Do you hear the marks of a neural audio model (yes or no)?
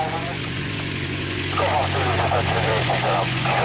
yes